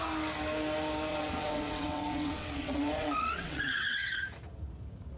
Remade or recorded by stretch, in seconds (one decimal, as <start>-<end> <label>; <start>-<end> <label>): 0.0-1.1 recorded; 1.1-4.2 remade; 4.2-5.2 recorded

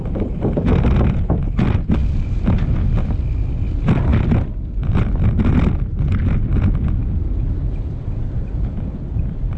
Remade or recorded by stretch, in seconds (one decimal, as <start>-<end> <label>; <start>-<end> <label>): 0.0-9.6 recorded

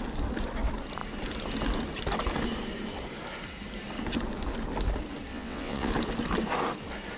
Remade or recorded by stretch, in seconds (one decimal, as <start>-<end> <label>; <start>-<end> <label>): 0.0-5.3 recorded; 5.3-5.9 remade; 5.9-7.2 recorded

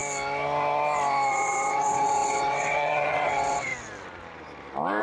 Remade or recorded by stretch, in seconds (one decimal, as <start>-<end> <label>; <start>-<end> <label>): 0.0-1.3 recorded; 1.3-3.7 remade; 3.7-5.0 recorded

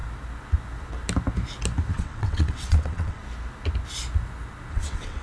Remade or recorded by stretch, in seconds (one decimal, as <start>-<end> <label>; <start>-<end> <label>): 0.0-1.9 recorded; 1.9-3.2 remade; 3.2-4.7 recorded; 4.7-5.2 remade

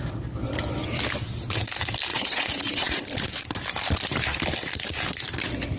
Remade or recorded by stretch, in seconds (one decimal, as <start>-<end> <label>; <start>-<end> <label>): 0.0-2.1 recorded; 2.1-3.0 remade; 3.0-5.8 recorded

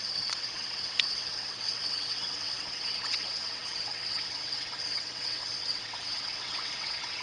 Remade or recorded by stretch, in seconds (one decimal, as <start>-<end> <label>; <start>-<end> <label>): 0.0-7.2 remade